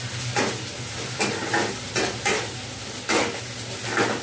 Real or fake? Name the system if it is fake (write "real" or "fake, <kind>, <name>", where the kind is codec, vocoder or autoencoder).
real